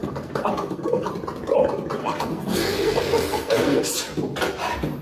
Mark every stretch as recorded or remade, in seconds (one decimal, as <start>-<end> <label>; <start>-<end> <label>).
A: 0.0-1.1 remade; 1.1-2.0 recorded; 2.0-3.9 remade; 3.9-5.0 recorded